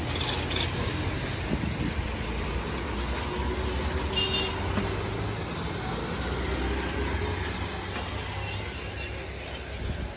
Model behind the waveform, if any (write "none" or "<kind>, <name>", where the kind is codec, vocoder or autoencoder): none